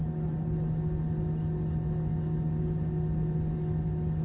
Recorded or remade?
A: recorded